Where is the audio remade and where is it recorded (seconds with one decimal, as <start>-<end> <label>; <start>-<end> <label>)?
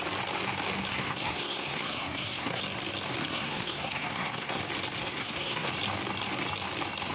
0.0-0.9 recorded; 0.9-2.6 remade; 2.6-3.2 recorded; 3.2-4.6 remade; 4.6-5.0 recorded; 5.0-5.7 remade; 5.7-7.1 recorded